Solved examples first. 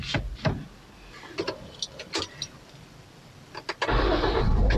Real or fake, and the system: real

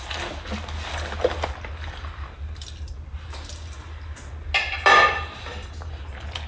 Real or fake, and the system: real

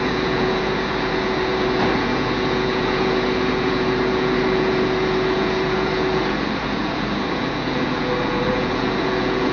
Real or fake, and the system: fake, vocoder, Vocos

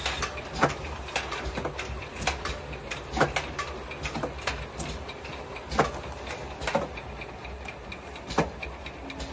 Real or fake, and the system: real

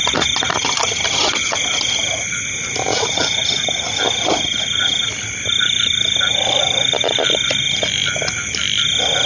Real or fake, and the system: real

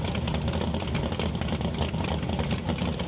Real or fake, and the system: real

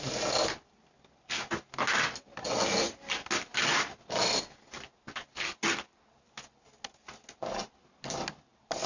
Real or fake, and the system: real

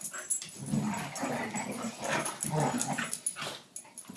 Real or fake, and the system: real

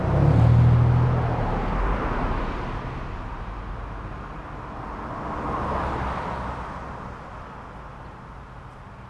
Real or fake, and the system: real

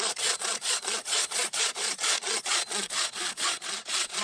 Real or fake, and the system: fake, vocoder, Vocos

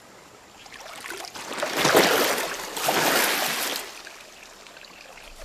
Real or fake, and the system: real